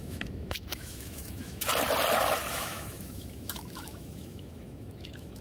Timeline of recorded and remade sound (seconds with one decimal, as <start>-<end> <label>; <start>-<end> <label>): 0.0-1.7 remade; 1.7-2.5 recorded; 2.5-5.4 remade